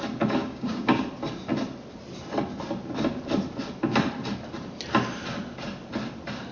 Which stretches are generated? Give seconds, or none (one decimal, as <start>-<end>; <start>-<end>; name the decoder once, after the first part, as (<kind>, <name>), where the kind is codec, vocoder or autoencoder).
0.4-1.0 (codec, DAC)